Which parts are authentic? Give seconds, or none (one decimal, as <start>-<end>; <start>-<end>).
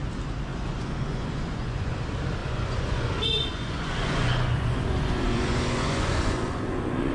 0.0-0.5; 2.0-2.4